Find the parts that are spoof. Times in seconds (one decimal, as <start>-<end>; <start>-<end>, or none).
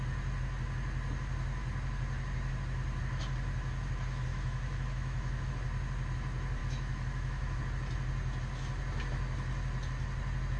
4.3-5.5; 6.6-7.6